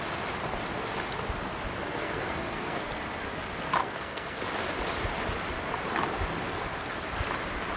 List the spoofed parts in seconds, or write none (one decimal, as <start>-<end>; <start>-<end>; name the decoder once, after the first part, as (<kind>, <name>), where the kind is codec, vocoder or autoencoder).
1.9-3.0 (codec, SNAC); 3.8-4.4